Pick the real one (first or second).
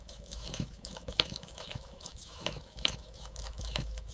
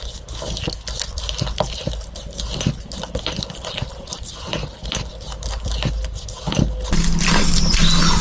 second